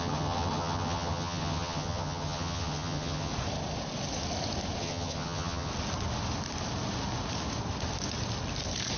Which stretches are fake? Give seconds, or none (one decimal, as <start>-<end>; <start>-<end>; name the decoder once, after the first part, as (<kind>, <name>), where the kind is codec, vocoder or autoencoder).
0.0-3.3 (vocoder, HiFi-GAN); 4.8-5.7